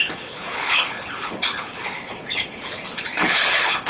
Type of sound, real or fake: fake